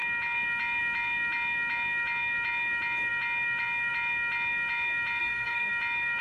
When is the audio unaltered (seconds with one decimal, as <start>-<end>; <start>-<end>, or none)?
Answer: 0.0-5.2; 5.7-6.2